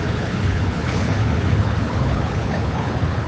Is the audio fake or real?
fake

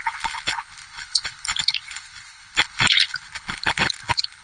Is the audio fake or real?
fake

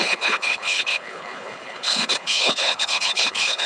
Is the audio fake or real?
fake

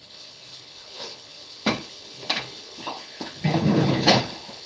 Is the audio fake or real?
fake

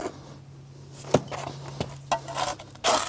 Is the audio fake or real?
real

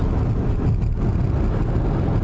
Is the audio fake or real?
real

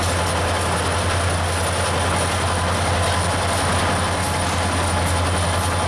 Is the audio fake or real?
real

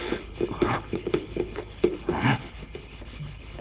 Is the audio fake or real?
fake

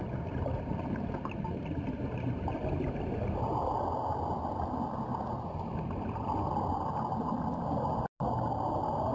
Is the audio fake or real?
real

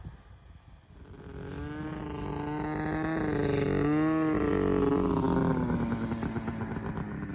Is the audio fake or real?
real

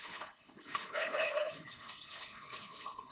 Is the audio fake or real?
fake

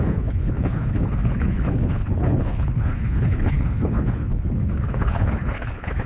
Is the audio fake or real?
fake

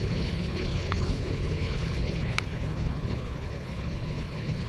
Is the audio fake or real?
fake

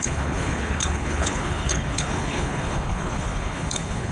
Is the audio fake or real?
fake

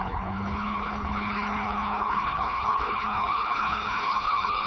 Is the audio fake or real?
fake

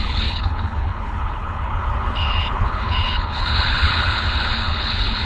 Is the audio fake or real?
fake